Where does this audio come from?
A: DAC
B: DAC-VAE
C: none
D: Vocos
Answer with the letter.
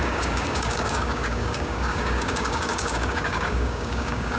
A